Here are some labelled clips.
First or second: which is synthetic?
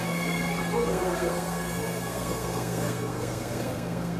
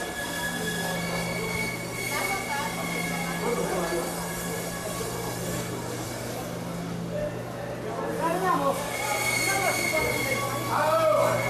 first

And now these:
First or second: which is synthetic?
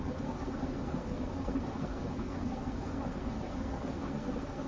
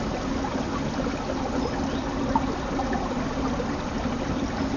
first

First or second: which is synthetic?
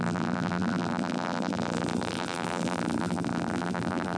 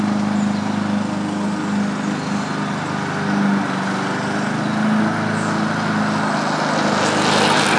first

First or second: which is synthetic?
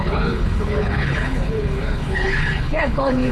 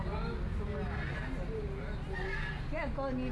first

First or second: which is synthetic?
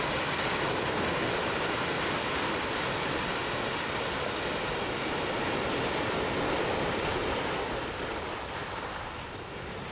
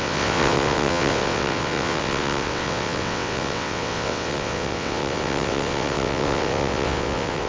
second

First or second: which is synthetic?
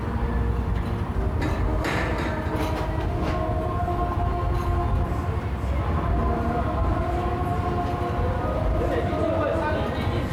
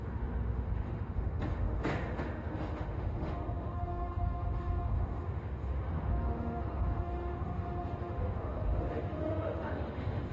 second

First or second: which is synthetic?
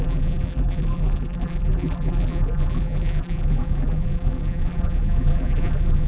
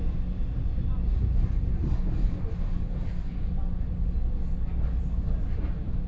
first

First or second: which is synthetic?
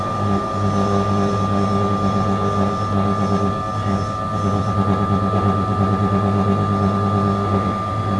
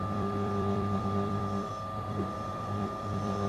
second